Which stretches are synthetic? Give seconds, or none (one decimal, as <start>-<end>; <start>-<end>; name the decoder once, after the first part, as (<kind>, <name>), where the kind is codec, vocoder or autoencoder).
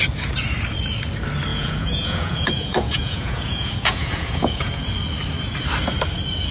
1.5-4.9 (vocoder, Vocos)